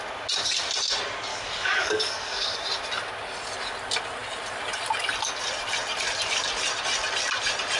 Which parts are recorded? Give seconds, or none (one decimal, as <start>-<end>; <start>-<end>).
0.0-1.3; 2.6-7.8

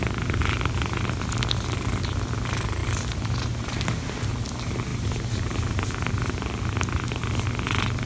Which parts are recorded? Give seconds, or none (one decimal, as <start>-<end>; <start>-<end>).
0.0-2.8; 3.6-4.9; 6.0-8.1

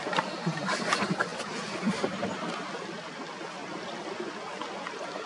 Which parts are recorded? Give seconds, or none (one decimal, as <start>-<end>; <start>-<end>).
0.0-5.3